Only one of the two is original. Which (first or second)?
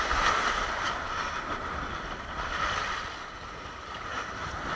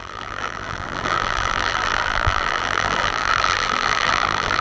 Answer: first